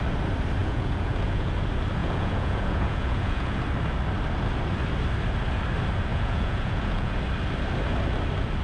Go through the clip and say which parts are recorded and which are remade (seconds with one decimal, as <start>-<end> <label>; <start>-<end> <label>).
0.0-0.6 recorded; 0.6-1.5 remade; 1.5-2.0 recorded; 2.0-3.6 remade; 3.6-6.1 recorded; 6.1-7.2 remade; 7.2-8.6 recorded